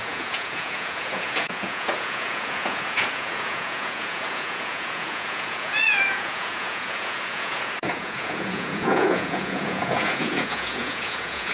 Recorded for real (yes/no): no